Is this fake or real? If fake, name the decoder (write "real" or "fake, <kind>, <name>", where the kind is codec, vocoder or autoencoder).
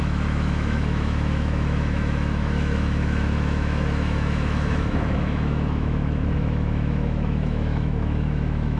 fake, autoencoder, DAC-VAE